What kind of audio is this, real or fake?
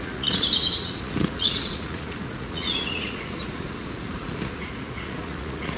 fake